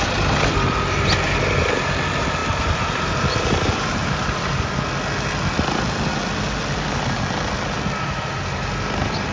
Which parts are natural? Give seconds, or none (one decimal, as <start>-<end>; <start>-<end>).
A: 0.0-2.4; 4.7-9.3